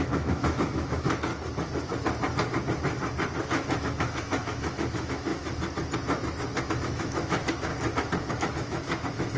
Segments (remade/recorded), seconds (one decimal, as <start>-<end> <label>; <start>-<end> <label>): 0.0-1.3 remade; 1.3-3.4 recorded; 3.4-5.3 remade; 5.3-6.7 recorded; 6.7-7.7 remade; 7.7-8.3 recorded; 8.3-9.4 remade